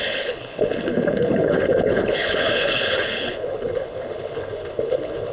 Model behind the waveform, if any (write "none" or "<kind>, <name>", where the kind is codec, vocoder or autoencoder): codec, HILCodec